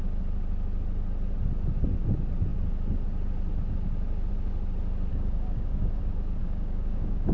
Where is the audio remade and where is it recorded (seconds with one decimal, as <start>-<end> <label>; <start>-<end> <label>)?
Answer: 0.0-5.1 recorded; 5.1-6.0 remade; 6.0-6.4 recorded; 6.4-7.3 remade